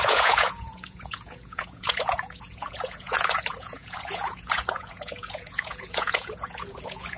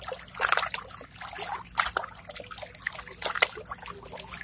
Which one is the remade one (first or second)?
first